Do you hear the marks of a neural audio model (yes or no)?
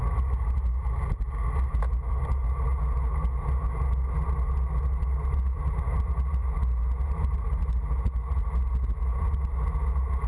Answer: no